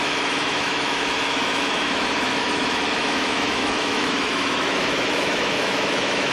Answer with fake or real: fake